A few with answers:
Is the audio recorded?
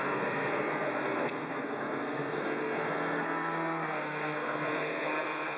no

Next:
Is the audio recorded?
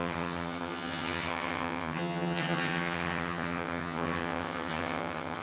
no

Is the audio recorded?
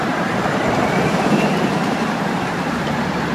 no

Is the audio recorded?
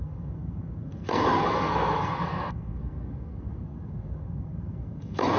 no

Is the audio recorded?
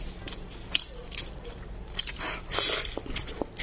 yes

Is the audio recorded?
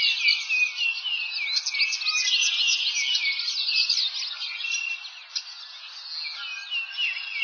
yes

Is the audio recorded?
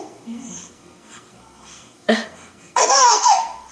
no